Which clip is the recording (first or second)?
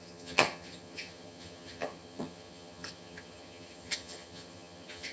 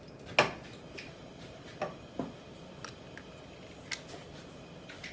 second